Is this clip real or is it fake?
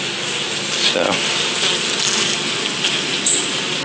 real